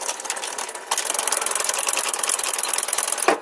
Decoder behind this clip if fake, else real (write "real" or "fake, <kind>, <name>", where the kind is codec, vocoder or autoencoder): real